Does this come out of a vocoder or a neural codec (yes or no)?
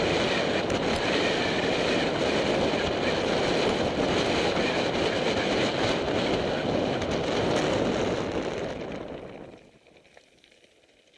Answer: no